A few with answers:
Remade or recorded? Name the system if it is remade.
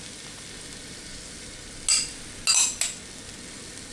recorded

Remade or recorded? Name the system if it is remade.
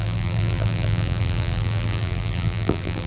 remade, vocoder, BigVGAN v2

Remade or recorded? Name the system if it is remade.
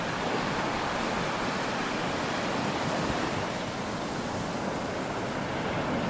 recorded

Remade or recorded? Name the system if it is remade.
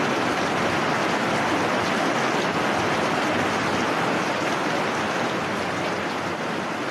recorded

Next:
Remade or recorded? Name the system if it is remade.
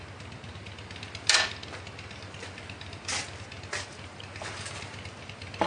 recorded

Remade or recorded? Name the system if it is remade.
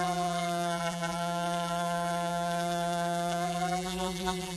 remade, vocoder, BigVGAN v2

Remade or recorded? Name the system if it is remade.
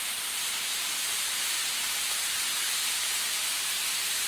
remade, vocoder, BigVGAN v2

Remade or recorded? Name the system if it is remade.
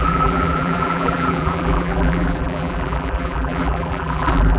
remade, vocoder, BigVGAN v2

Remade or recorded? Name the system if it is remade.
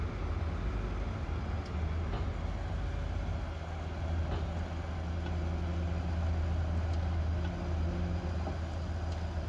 recorded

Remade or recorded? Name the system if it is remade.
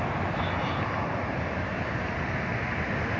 recorded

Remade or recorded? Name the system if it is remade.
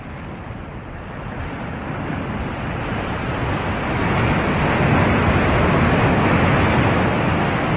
recorded